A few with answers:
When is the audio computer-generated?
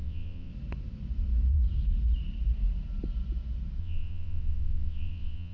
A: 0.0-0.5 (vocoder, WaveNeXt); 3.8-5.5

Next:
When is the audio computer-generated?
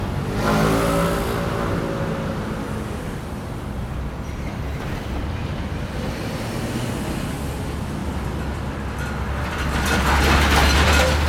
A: 8.0-10.0 (vocoder, BigVGAN v2)